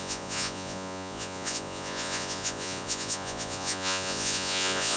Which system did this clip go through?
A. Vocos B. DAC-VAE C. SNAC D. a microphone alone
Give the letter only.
A